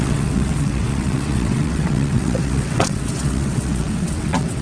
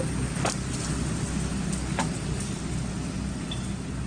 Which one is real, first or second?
second